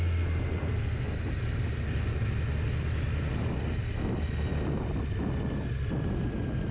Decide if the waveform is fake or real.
real